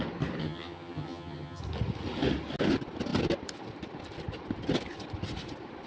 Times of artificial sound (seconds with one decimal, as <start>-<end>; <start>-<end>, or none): 0.4-1.6